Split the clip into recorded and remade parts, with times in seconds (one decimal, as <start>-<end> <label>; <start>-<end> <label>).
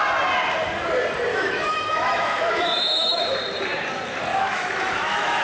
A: 0.0-1.3 recorded; 1.3-3.2 remade; 3.2-4.3 recorded; 4.3-5.4 remade